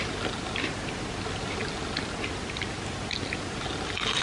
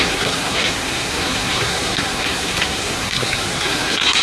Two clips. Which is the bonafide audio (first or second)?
first